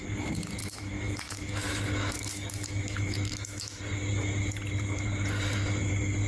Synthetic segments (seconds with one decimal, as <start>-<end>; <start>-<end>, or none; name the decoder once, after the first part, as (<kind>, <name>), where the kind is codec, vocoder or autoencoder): 0.6-3.8 (autoencoder, DAC-VAE)